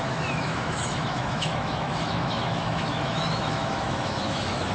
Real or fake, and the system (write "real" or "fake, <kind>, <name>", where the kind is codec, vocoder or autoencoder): fake, autoencoder, DAC-VAE